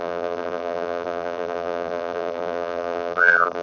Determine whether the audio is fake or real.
fake